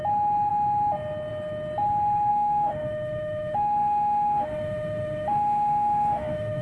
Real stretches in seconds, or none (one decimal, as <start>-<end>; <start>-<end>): 0.0-2.3